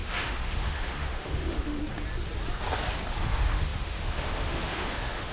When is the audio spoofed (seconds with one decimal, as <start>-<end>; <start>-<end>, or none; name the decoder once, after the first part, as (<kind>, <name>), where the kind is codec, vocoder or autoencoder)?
0.0-1.8 (autoencoder, DAC-VAE); 3.2-5.3